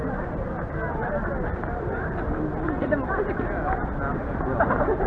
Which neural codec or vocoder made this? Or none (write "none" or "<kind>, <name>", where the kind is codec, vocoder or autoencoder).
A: none